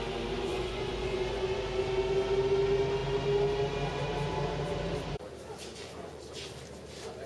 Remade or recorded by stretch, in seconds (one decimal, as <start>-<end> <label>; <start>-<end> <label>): 0.0-0.5 recorded; 0.5-1.6 remade; 1.6-5.7 recorded; 5.7-6.2 remade; 6.2-7.3 recorded